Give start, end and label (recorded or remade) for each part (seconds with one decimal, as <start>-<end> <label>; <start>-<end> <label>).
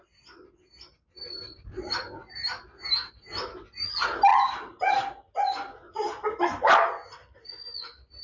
0.0-8.2 recorded